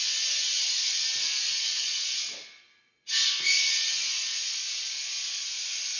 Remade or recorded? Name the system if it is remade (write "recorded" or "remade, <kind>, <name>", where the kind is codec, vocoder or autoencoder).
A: recorded